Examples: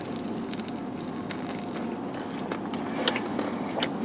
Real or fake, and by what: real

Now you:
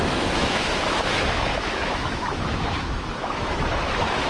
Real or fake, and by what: fake, autoencoder, DAC-VAE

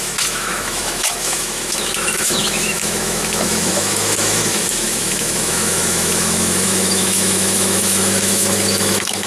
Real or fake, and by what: fake, autoencoder, DAC-VAE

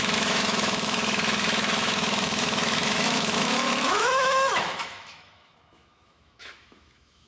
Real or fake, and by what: fake, autoencoder, DAC-VAE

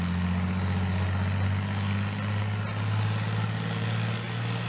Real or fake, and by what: real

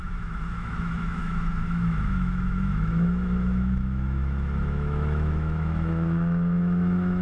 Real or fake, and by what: fake, autoencoder, DAC-VAE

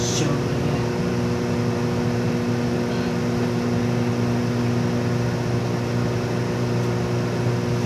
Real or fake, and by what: real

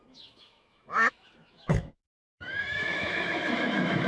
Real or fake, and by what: fake, autoencoder, DAC-VAE